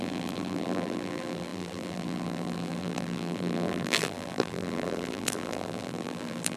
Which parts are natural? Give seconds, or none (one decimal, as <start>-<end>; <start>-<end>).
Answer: none